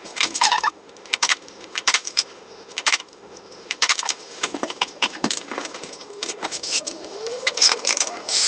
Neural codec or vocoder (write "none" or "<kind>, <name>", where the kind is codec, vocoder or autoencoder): autoencoder, DAC-VAE